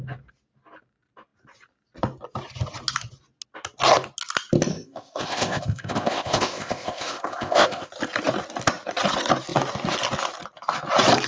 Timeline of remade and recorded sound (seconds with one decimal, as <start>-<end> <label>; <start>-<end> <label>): 0.0-4.7 recorded; 4.7-7.9 remade; 7.9-11.3 recorded